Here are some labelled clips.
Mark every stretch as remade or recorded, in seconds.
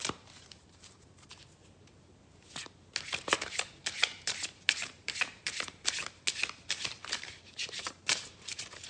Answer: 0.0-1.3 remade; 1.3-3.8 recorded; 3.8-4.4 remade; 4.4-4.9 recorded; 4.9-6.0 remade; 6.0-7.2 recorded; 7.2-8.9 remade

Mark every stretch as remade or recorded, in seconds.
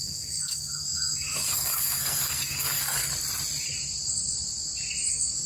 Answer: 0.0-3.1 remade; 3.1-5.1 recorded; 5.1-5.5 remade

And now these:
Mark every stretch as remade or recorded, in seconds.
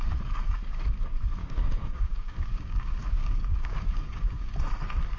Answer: 0.0-1.4 recorded; 1.4-4.5 remade; 4.5-5.2 recorded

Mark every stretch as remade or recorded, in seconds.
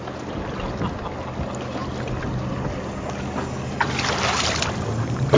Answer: 0.0-5.4 recorded